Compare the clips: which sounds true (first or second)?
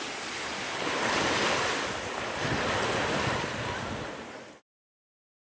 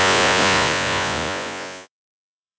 first